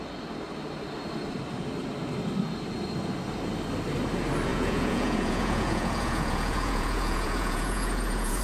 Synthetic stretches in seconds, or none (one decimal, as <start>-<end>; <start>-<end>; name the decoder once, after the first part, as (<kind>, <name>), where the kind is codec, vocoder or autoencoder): 4.5-8.4 (vocoder, Vocos)